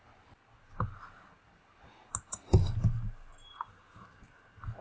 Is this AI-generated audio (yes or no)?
no